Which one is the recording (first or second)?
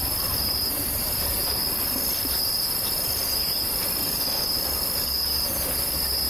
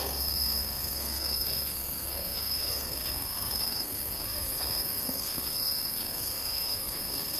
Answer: first